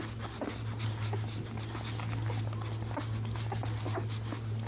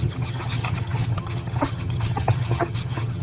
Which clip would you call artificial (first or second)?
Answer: second